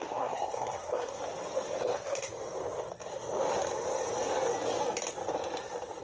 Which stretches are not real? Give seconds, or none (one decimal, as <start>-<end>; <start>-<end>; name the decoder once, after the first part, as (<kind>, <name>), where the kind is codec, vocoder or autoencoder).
0.0-1.2 (codec, SNAC); 1.8-2.3